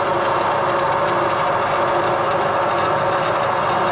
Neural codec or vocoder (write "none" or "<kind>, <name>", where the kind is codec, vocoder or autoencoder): none